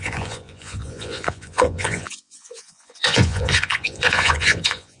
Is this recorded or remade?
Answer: remade